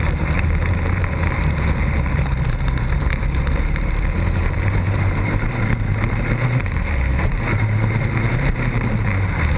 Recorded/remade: remade